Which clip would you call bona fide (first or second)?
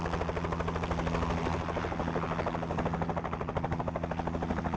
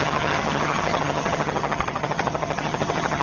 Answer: first